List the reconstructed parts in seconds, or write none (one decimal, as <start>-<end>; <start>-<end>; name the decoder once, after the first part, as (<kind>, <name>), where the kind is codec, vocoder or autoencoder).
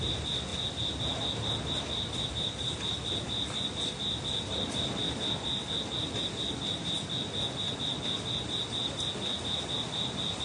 none